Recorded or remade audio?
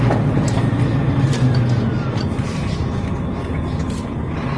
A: recorded